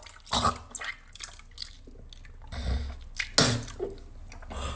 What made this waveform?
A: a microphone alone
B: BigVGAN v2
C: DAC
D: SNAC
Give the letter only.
A